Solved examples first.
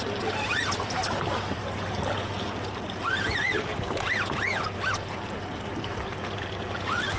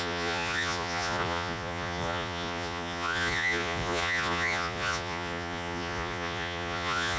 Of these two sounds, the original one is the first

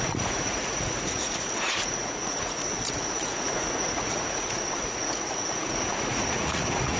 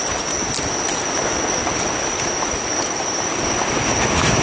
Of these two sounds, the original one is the second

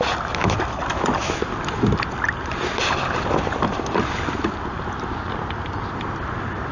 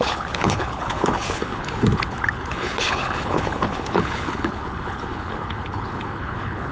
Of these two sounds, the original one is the first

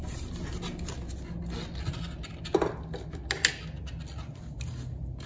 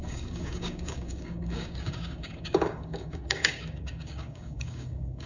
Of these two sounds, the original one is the first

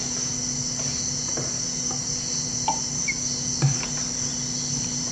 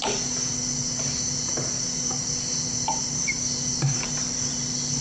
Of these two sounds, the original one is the first